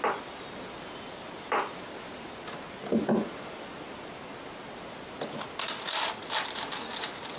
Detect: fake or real real